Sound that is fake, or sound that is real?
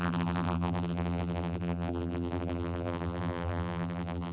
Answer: fake